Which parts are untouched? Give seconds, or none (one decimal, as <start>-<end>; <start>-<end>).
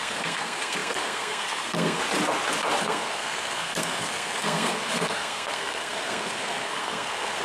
2.0-2.8